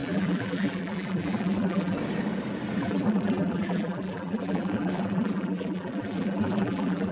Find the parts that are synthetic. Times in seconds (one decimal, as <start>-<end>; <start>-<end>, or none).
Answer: 0.0-2.0; 2.8-7.1